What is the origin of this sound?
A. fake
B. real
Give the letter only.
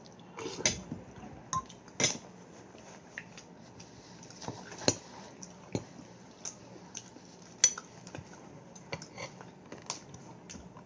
B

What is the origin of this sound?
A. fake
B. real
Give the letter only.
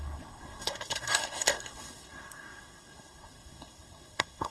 A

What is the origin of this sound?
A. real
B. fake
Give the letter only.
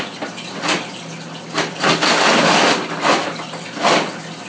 A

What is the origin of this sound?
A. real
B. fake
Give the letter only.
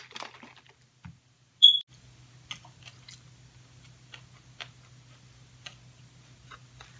A